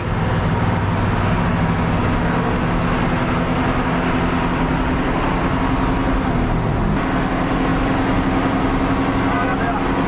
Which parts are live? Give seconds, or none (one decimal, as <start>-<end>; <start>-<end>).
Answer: 0.0-10.1